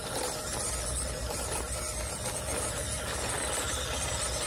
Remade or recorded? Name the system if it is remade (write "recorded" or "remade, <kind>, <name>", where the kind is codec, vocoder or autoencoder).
recorded